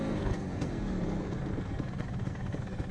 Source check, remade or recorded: remade